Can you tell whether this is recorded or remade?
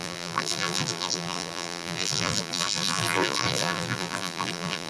remade